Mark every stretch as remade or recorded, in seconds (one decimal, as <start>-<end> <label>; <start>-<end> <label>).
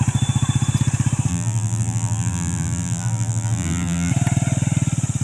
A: 0.0-1.3 recorded; 1.3-4.1 remade; 4.1-5.2 recorded